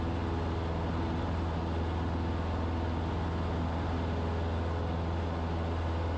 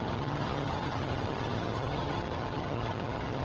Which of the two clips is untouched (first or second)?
first